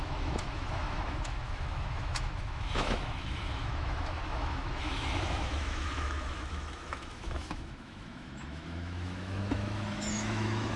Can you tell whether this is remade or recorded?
remade